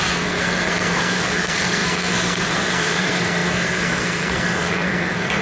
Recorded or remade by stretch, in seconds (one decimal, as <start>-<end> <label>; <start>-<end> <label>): 0.0-5.4 remade